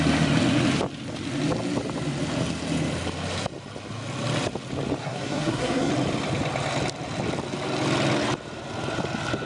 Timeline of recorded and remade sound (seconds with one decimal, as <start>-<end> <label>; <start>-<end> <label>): 0.0-5.0 recorded; 5.0-5.9 remade; 5.9-9.5 recorded